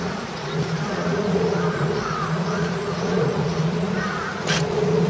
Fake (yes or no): yes